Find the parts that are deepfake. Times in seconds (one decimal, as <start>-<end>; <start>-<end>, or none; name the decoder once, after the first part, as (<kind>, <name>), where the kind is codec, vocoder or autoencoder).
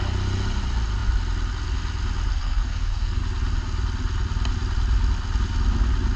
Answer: 2.3-3.2 (codec, SNAC)